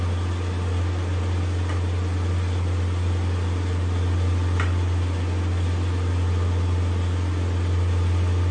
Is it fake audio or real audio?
real